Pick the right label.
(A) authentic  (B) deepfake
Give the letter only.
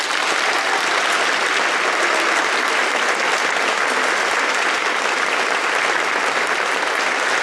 A